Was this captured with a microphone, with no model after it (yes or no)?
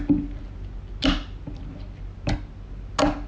yes